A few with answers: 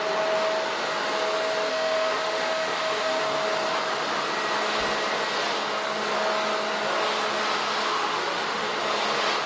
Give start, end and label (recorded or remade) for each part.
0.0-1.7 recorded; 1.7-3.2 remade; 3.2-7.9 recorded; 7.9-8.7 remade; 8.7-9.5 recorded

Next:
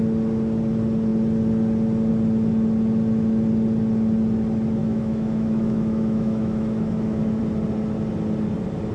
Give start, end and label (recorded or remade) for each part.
0.0-4.8 recorded; 4.8-7.4 remade; 7.4-8.9 recorded

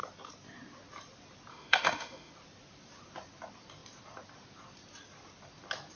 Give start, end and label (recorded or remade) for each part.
0.0-1.5 recorded; 1.5-2.3 remade; 2.3-6.0 recorded

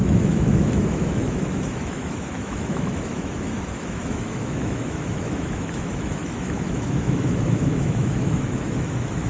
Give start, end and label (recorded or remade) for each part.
0.0-9.3 remade

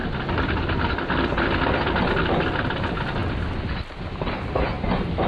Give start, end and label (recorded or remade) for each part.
0.0-5.3 recorded

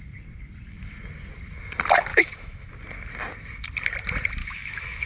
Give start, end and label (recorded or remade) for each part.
0.0-2.1 recorded; 2.1-2.7 remade; 2.7-4.4 recorded; 4.4-5.1 remade

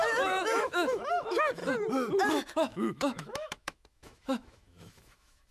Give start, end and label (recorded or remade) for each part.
0.0-1.6 remade; 1.6-2.3 recorded; 2.3-5.5 remade